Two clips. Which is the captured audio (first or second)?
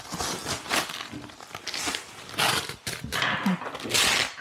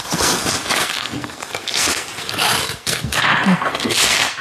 first